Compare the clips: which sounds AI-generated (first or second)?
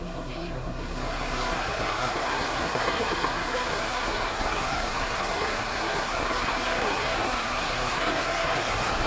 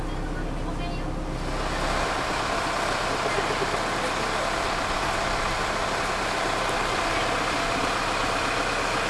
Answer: first